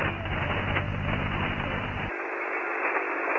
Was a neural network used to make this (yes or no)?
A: no